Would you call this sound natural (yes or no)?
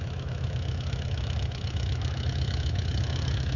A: no